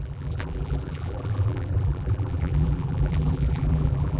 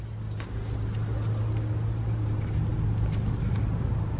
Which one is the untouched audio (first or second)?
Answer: second